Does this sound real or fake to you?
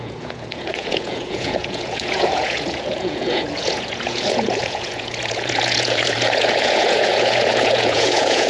fake